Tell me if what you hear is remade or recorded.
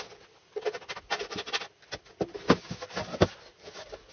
recorded